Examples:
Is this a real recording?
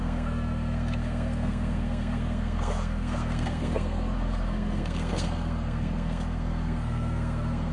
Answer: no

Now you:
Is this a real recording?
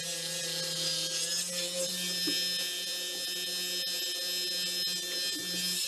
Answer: yes